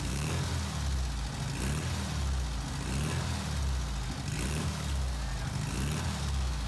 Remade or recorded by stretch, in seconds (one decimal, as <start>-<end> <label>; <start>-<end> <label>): 0.0-0.5 remade; 0.5-4.5 recorded; 4.5-5.3 remade; 5.3-6.2 recorded; 6.2-6.7 remade